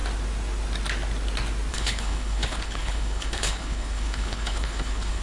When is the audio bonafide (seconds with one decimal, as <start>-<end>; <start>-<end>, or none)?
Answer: 0.0-1.7